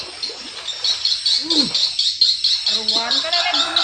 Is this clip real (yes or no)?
yes